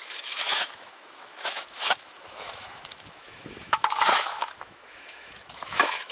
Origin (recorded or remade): remade